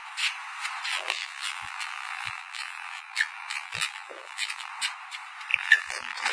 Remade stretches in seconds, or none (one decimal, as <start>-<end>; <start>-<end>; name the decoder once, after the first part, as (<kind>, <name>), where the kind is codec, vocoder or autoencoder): 0.9-4.7 (vocoder, BigVGAN v2); 5.5-6.3

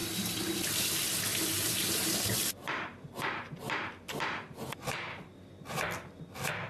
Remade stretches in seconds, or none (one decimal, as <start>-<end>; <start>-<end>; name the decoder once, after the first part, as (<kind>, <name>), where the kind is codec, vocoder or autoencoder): 1.3-5.3 (vocoder, BigVGAN v2)

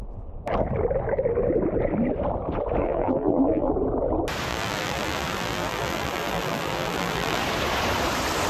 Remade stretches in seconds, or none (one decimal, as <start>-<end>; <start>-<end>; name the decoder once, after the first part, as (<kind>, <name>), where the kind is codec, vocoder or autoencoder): 2.8-3.7 (vocoder, BigVGAN v2); 4.5-7.4

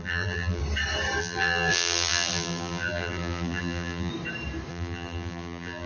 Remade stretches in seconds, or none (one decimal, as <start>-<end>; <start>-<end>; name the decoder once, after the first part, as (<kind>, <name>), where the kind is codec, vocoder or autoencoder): 0.0-0.6 (vocoder, BigVGAN v2); 1.2-4.1; 4.7-5.9

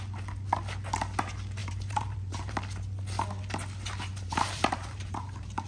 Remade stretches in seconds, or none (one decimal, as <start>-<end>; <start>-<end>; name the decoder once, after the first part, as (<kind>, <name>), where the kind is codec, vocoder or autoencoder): 1.6-2.6 (vocoder, BigVGAN v2); 4.1-5.7

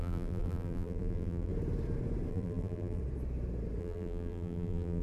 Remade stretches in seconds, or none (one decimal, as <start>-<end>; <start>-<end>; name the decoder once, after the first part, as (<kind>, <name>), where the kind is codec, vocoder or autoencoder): 0.0-1.5 (vocoder, BigVGAN v2); 2.3-3.0; 3.8-5.0

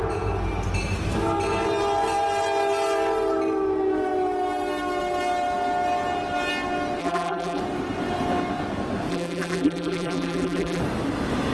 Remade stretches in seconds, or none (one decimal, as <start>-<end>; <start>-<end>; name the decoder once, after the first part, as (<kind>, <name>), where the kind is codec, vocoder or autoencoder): 7.0-7.6 (vocoder, BigVGAN v2); 9.1-10.8

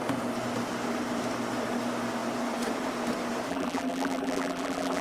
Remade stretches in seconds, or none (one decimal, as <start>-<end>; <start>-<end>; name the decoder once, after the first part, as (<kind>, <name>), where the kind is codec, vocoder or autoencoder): 3.5-5.0 (vocoder, BigVGAN v2)